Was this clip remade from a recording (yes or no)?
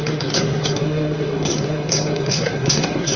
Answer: yes